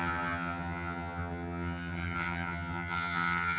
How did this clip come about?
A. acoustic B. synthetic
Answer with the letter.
B